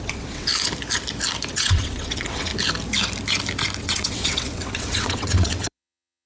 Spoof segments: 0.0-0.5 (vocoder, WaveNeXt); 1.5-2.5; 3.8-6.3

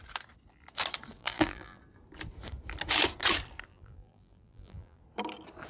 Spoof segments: 1.2-1.8 (vocoder, BigVGAN v2); 3.7-5.0

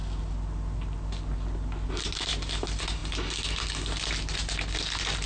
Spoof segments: none

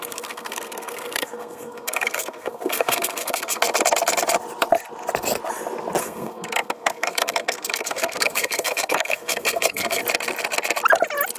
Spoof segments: 0.0-3.6 (codec, SNAC); 6.0-10.0

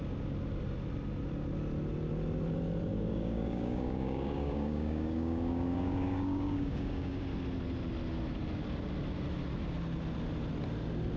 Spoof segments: 2.9-7.2 (codec, DAC)

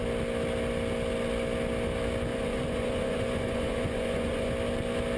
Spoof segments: 2.3-4.5 (vocoder, Vocos)

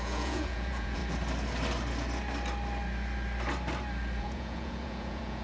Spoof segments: 0.0-1.0 (vocoder, Vocos); 4.2-5.4

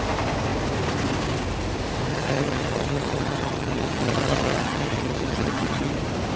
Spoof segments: 2.1-5.9 (vocoder, HiFi-GAN)